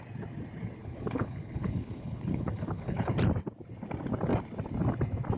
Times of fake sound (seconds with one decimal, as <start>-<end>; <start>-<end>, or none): 0.8-3.1